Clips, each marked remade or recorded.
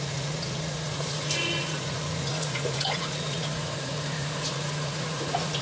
remade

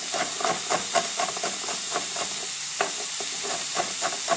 recorded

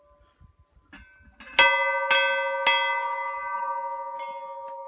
recorded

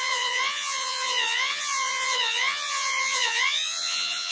remade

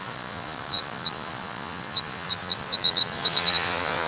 remade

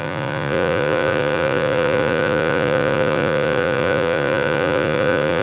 remade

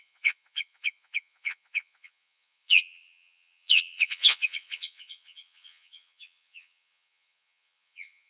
remade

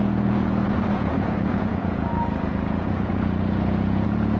remade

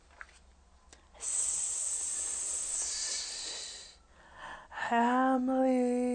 recorded